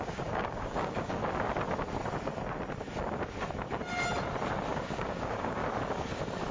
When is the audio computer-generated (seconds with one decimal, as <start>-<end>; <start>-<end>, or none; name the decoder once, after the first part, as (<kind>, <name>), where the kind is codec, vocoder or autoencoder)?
0.0-1.2 (codec, DAC); 4.7-5.6